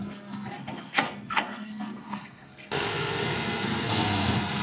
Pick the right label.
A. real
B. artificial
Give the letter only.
B